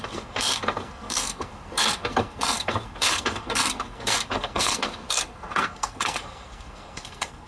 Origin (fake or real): fake